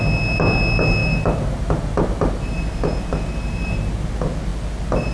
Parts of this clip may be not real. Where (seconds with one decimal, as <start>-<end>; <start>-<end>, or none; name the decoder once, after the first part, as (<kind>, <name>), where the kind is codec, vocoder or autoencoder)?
1.0-4.1 (vocoder, BigVGAN v2)